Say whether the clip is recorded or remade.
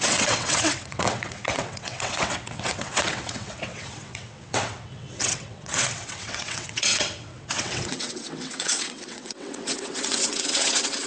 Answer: remade